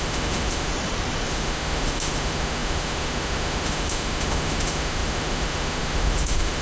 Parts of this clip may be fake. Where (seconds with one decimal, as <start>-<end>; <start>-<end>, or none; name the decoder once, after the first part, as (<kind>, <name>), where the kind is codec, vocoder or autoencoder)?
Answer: 0.0-0.7 (autoencoder, DAC-VAE); 1.3-6.6